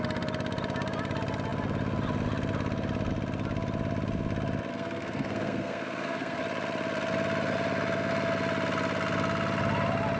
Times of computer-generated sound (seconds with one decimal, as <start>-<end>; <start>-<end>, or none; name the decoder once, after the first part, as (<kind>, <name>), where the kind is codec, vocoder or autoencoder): 4.7-6.4 (codec, SNAC)